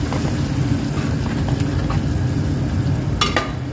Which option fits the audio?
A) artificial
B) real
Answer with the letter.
B